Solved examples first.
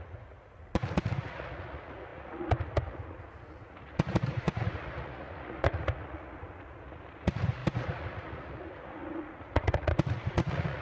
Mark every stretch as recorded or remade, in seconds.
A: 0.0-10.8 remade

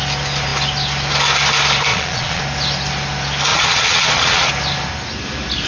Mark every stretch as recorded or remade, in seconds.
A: 0.0-1.9 recorded; 1.9-2.4 remade; 2.4-3.5 recorded; 3.5-4.5 remade; 4.5-5.7 recorded

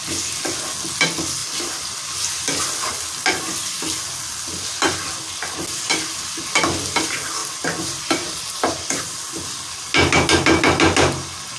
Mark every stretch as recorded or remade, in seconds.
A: 0.0-11.6 recorded

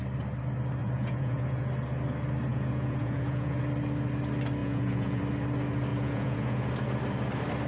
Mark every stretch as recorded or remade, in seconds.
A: 0.0-0.8 recorded; 0.8-1.7 remade; 1.7-2.5 recorded; 2.5-3.6 remade; 3.6-4.6 recorded; 4.6-5.2 remade; 5.2-5.9 recorded; 5.9-6.7 remade; 6.7-7.7 recorded

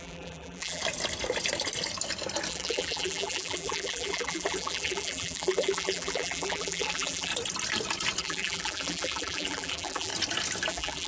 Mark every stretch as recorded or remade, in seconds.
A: 0.0-0.8 remade; 0.8-2.5 recorded; 2.5-7.3 remade; 7.3-8.2 recorded; 8.2-10.1 remade; 10.1-10.7 recorded; 10.7-11.1 remade

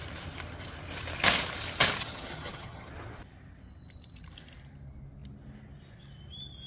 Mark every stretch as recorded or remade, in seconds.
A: 0.0-2.0 recorded; 2.0-2.9 remade; 2.9-6.7 recorded

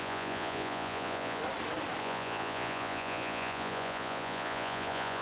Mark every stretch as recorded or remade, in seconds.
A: 0.0-1.4 remade; 1.4-2.0 recorded; 2.0-5.2 remade

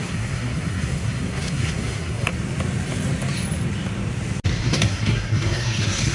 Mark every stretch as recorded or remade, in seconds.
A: 0.0-2.3 remade; 2.3-4.6 recorded; 4.6-6.1 remade